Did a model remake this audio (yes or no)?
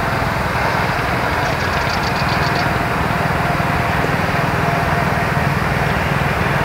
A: no